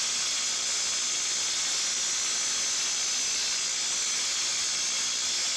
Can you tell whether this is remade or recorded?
recorded